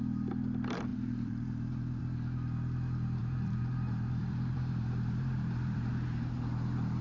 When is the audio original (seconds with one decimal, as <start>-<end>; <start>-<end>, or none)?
0.0-0.9; 2.0-3.2; 5.9-7.0